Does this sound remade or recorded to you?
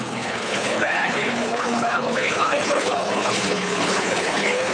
remade